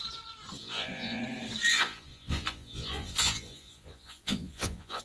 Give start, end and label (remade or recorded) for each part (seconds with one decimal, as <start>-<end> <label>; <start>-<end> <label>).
0.0-0.6 recorded; 0.6-1.2 remade; 1.2-1.7 recorded; 1.7-5.0 remade